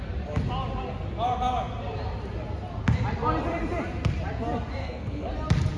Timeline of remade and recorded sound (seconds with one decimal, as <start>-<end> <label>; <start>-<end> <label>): 0.0-4.8 recorded; 4.8-5.3 remade; 5.3-5.8 recorded